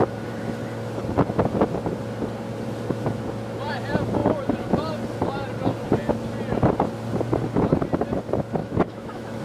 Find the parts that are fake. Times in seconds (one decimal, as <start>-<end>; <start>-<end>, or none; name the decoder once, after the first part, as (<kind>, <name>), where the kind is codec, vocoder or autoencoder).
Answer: 8.6-9.4 (autoencoder, DAC-VAE)